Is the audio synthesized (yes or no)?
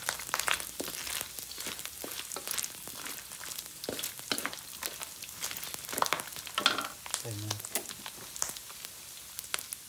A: no